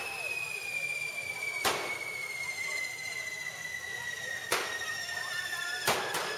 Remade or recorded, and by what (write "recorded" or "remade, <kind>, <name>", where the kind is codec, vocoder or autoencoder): recorded